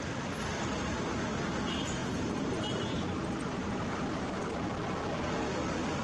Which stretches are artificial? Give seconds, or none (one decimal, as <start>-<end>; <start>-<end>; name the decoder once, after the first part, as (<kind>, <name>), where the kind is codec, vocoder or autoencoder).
2.0-4.5 (vocoder, BigVGAN v2)